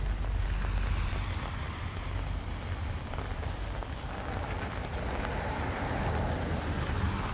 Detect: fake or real real